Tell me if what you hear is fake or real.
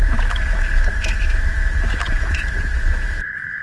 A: fake